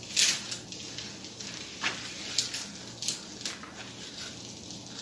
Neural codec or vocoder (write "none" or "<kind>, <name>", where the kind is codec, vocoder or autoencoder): none